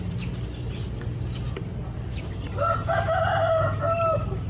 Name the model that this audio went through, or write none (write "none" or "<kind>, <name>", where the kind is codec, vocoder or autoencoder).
none